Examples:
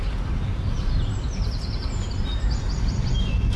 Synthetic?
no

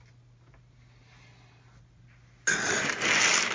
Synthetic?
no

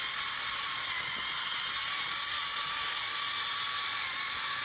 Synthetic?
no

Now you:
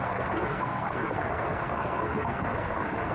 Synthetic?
yes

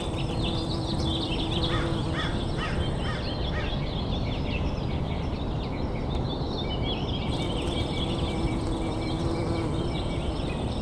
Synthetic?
no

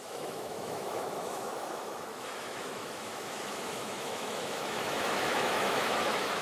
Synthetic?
yes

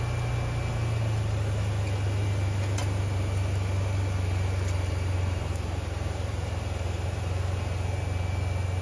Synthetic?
no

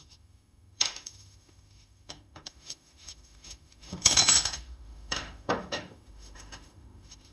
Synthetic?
yes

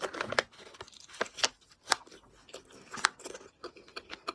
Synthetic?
no